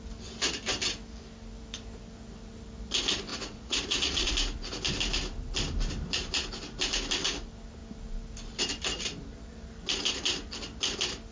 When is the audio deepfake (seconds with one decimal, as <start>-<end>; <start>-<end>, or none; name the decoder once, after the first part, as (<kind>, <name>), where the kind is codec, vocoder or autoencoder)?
3.3-4.3 (vocoder, Vocos)